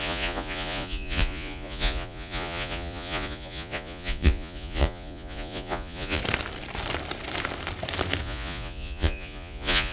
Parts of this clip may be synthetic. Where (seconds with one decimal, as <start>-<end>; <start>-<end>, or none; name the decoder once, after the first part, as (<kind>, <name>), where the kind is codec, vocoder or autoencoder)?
0.0-6.2 (vocoder, Vocos); 8.2-9.9